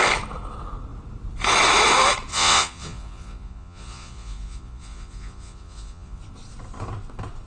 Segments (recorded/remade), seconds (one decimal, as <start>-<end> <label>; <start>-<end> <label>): 0.0-2.3 recorded; 2.3-6.2 remade; 6.2-7.5 recorded